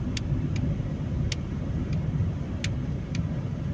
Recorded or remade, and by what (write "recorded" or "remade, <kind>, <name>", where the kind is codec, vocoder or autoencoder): recorded